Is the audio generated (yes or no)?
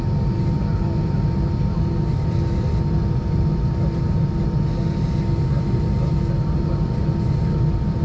no